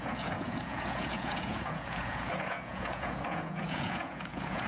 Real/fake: fake